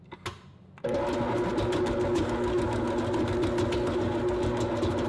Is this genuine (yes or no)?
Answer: yes